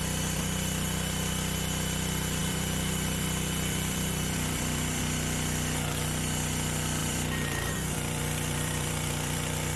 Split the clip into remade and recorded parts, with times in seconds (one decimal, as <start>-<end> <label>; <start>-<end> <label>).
0.0-2.4 recorded; 2.4-5.0 remade; 5.0-7.0 recorded; 7.0-9.8 remade